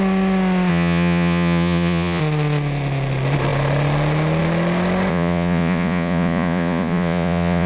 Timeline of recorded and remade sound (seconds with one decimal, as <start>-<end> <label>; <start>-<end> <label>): 0.0-0.7 recorded; 0.7-2.2 remade; 2.2-5.1 recorded; 5.1-7.7 remade